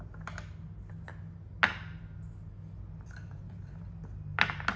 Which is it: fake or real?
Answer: real